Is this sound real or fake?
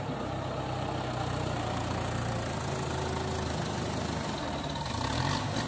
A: real